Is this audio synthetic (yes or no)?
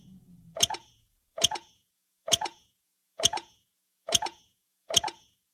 yes